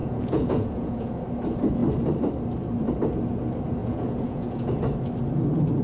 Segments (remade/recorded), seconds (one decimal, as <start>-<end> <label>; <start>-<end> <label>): 0.0-1.2 remade; 1.2-3.8 recorded; 3.8-4.7 remade; 4.7-5.8 recorded